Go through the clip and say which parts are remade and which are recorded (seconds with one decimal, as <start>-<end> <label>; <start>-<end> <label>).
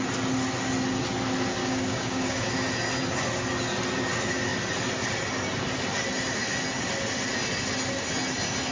0.0-1.6 recorded; 1.6-2.5 remade; 2.5-8.7 recorded